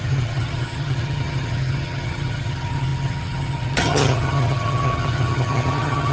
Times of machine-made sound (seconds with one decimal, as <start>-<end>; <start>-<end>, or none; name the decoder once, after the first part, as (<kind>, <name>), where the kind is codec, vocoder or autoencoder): 0.0-6.1 (vocoder, HiFi-GAN)